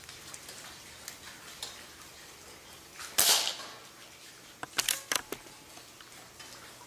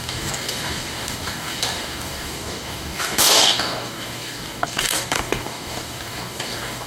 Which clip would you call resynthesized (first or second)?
second